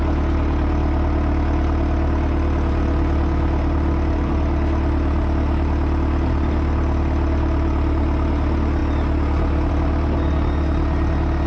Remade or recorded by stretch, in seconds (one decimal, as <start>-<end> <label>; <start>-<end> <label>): 0.0-11.5 recorded